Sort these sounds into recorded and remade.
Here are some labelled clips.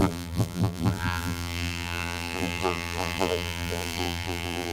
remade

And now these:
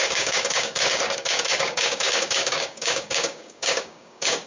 remade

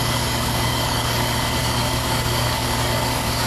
remade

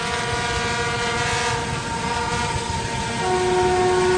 recorded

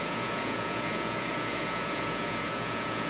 remade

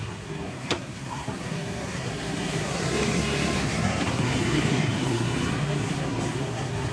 remade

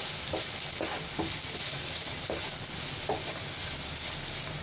recorded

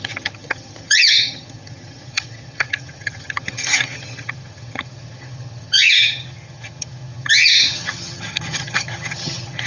remade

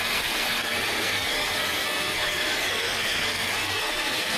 remade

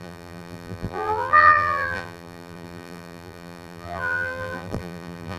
remade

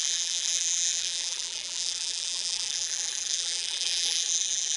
remade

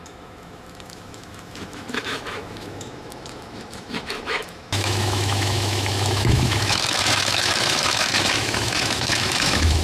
remade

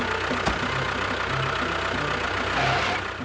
recorded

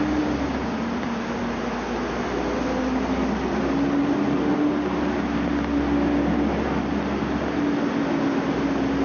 recorded